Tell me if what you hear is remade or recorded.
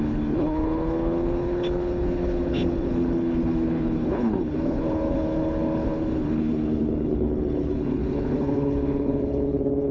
remade